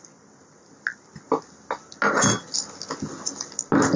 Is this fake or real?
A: real